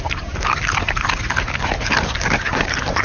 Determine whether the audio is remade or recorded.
recorded